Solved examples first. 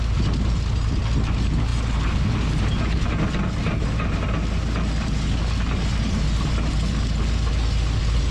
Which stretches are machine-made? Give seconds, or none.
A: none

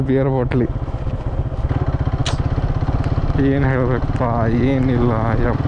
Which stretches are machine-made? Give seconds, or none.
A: none

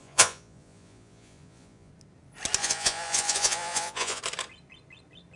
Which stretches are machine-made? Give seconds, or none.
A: 0.0-1.9; 2.6-4.2

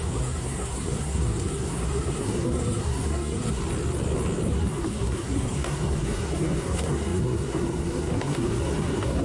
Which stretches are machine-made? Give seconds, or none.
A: 0.0-3.6; 4.5-9.2

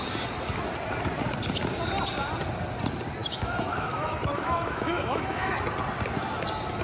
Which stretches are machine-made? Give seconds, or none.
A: 3.2-5.6

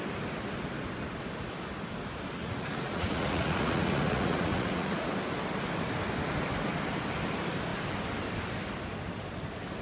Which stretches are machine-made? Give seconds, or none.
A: 2.4-5.1

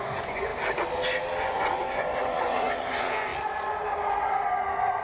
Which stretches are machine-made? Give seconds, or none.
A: 0.0-0.5; 1.4-3.3